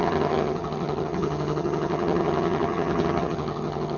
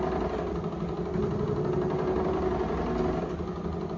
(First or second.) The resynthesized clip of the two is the first